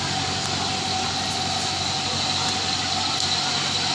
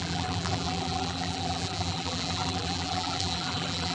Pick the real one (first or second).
first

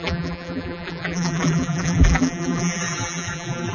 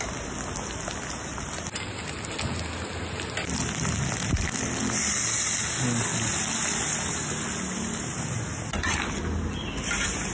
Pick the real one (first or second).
second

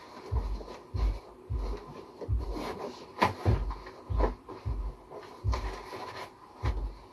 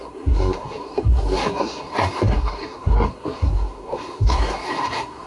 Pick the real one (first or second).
first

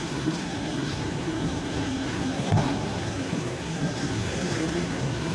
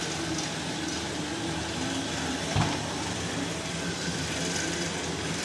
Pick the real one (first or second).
second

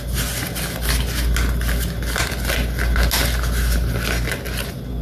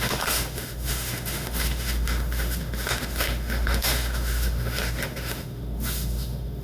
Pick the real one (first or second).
first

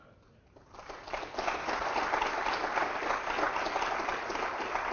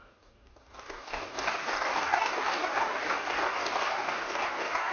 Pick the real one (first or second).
first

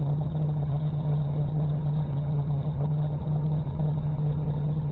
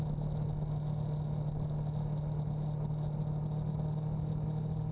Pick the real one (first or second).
second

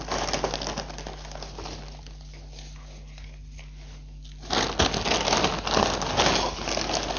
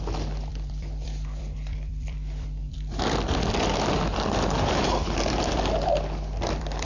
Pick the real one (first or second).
first